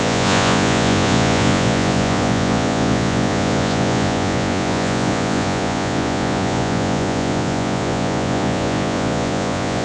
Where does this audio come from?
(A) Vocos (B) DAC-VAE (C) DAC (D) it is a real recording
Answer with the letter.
A